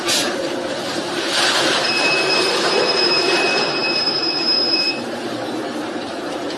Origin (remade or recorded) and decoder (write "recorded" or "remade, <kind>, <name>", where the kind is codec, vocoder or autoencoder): remade, vocoder, BigVGAN v2